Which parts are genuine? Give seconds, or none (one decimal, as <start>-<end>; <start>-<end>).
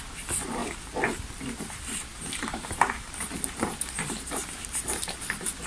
0.6-1.6